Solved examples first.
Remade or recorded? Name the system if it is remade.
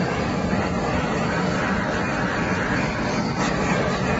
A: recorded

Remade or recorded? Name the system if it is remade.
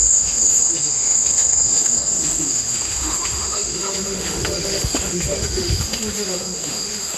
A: remade, autoencoder, DAC-VAE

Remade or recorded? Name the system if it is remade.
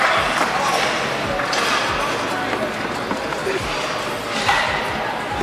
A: recorded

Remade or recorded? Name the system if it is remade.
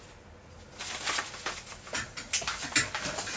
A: recorded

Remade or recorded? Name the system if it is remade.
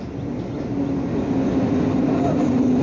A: recorded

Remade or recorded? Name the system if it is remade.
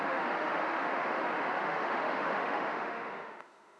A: remade, autoencoder, DAC-VAE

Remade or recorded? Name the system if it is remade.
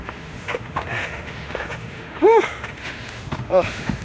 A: remade, autoencoder, DAC-VAE